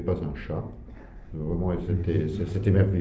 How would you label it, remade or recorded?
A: recorded